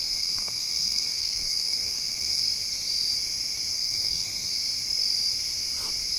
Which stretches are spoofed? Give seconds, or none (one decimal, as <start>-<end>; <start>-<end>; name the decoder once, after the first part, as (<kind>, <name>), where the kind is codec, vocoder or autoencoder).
0.0-2.4 (codec, SNAC); 3.7-4.5